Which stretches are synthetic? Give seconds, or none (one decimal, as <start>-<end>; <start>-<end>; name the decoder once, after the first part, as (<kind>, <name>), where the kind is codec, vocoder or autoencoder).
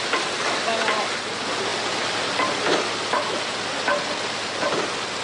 none